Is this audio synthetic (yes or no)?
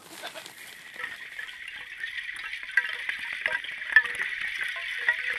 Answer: no